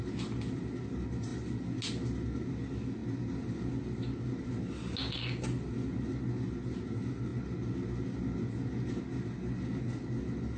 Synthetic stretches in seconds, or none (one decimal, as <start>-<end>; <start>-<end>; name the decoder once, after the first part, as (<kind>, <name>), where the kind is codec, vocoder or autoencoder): none